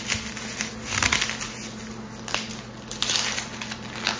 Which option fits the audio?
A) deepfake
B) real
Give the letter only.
B